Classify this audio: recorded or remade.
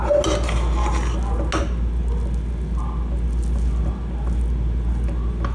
recorded